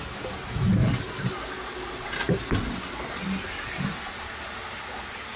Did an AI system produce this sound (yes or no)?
no